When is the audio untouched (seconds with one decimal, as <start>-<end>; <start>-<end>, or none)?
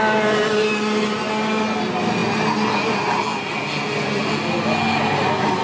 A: 0.0-5.6